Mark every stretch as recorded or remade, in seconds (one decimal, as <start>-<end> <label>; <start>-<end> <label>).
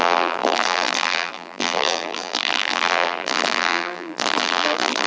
0.0-5.1 remade